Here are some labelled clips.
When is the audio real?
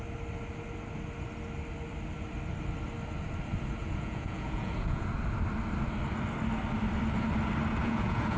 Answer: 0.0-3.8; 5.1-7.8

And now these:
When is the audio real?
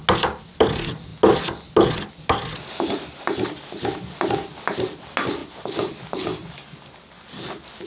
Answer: 0.0-7.9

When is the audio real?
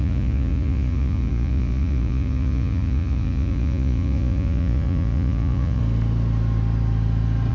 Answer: 5.8-7.5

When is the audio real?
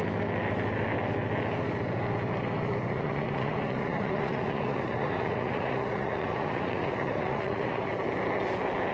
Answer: 0.0-2.9; 7.9-8.9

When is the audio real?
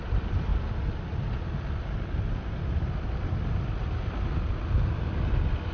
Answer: 0.0-5.7